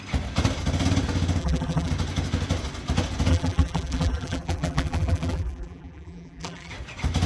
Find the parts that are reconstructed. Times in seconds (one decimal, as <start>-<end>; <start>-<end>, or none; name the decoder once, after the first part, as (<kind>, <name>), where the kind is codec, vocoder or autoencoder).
1.4-1.9 (vocoder, BigVGAN v2); 3.3-6.7